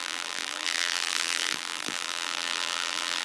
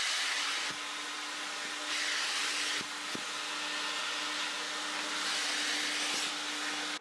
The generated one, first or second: first